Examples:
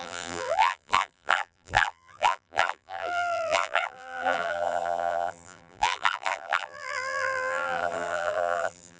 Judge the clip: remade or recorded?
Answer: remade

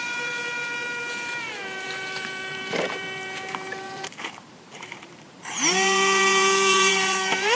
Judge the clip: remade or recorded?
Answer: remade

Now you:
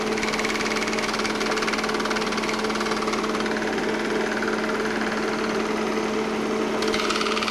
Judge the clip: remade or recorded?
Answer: recorded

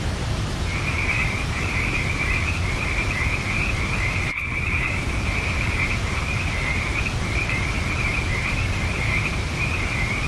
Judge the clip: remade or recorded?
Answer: remade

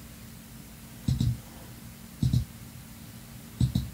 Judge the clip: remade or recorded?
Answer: remade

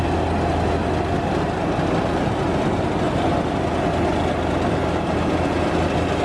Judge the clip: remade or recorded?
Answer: recorded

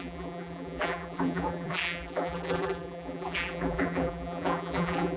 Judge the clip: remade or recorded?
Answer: remade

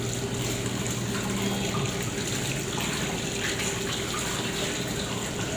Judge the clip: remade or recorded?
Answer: recorded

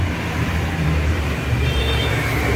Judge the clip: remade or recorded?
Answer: remade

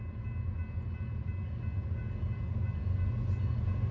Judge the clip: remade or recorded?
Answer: recorded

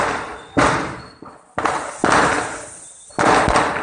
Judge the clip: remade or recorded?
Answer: remade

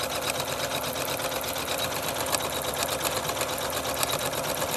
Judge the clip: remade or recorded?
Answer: recorded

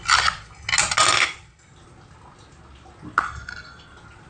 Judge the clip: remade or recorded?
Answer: recorded